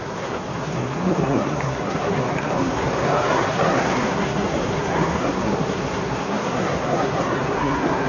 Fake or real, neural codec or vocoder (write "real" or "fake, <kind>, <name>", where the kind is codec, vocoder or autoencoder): fake, codec, SNAC